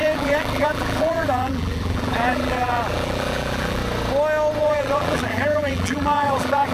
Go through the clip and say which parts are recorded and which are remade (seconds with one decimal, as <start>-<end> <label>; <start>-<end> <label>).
0.0-3.8 remade; 3.8-4.6 recorded; 4.6-6.7 remade